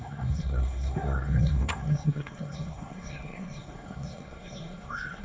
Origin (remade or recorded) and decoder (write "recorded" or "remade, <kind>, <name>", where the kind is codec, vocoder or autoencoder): remade, codec, SNAC